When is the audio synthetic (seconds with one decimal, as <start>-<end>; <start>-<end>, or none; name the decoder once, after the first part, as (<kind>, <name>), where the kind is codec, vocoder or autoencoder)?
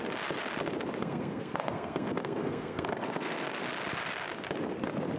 1.0-3.6 (codec, SNAC)